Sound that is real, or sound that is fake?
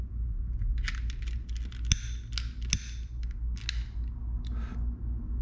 real